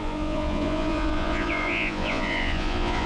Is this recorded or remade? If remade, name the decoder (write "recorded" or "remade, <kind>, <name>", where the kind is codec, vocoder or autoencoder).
remade, vocoder, Vocos